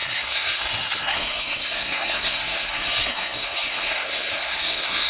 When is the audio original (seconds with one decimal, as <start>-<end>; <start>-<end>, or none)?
none